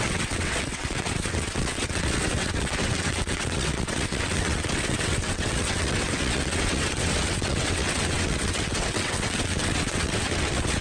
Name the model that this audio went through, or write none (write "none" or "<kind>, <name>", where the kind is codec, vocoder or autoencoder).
vocoder, WaveNeXt